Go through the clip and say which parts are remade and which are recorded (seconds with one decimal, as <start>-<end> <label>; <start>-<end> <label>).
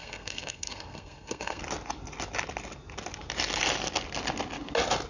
0.0-1.6 remade; 1.6-5.1 recorded